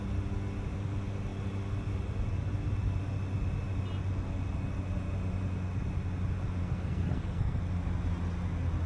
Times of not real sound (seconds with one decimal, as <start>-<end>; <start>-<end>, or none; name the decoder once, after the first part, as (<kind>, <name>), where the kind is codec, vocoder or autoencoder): 6.6-7.6 (codec, SNAC)